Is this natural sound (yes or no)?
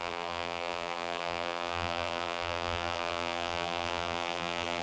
no